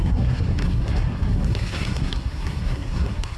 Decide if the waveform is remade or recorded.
remade